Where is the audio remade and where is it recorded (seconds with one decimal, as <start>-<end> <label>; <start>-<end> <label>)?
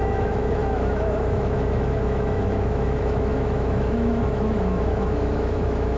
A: 0.0-6.0 remade